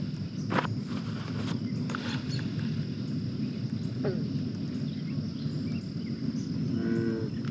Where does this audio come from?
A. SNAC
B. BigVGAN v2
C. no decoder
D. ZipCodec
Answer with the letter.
C